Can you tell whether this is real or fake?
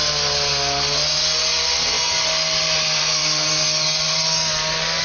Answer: real